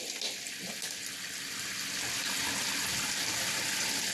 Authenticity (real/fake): real